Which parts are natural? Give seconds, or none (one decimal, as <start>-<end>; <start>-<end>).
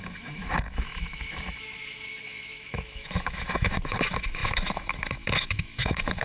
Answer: none